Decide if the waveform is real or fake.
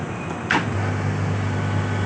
real